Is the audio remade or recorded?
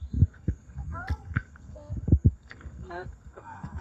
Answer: remade